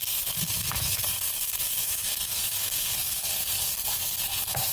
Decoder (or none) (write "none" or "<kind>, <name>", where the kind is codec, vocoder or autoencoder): codec, SNAC